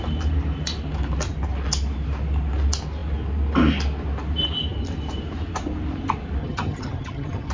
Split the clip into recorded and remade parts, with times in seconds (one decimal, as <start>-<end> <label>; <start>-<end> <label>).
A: 0.0-6.4 recorded; 6.4-7.5 remade